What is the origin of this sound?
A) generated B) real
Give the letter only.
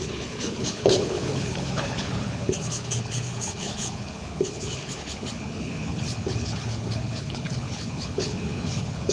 A